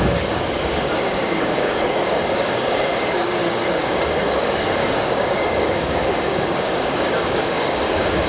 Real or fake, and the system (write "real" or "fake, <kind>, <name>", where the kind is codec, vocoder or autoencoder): fake, codec, DAC